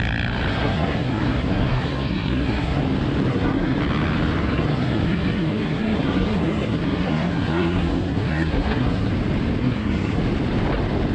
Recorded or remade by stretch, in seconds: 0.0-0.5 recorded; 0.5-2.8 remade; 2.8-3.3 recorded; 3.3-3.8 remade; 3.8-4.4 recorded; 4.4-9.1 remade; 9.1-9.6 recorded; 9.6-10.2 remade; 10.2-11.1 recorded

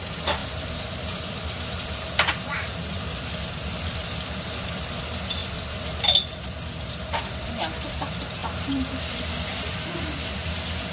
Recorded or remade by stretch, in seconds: 0.0-0.4 recorded; 0.4-5.0 remade; 5.0-10.9 recorded

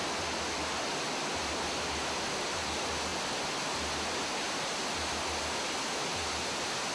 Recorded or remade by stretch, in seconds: 0.0-6.9 recorded

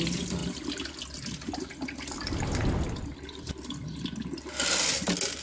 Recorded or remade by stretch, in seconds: 0.0-5.4 recorded

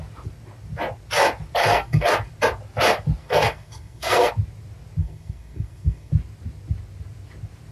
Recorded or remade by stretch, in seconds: 0.0-1.6 recorded; 1.6-2.1 remade; 2.1-3.2 recorded; 3.2-4.3 remade; 4.3-5.0 recorded; 5.0-6.1 remade; 6.1-7.7 recorded

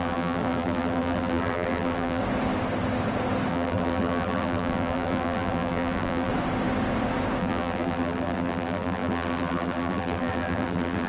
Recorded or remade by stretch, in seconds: 0.0-2.2 remade; 2.2-3.5 recorded; 3.5-6.3 remade; 6.3-7.4 recorded; 7.4-11.1 remade

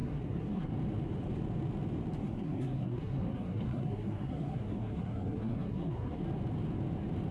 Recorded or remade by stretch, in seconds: 0.0-0.7 remade; 0.7-2.2 recorded; 2.2-6.2 remade; 6.2-7.3 recorded

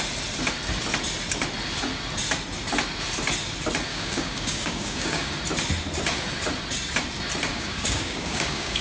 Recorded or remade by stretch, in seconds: 0.0-3.9 recorded; 3.9-5.3 remade; 5.3-7.5 recorded; 7.5-8.8 remade